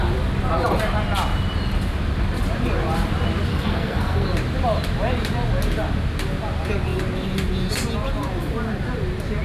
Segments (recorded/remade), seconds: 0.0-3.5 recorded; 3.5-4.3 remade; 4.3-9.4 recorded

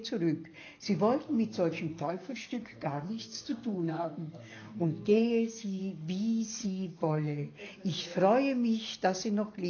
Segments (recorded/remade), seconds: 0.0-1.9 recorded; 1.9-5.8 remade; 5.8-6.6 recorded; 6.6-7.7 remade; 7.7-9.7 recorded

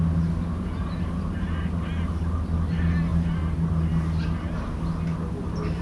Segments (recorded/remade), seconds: 0.0-5.8 recorded

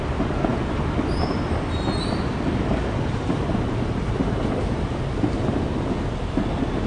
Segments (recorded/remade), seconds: 0.0-6.9 recorded